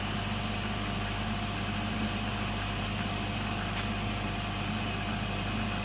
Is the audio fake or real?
real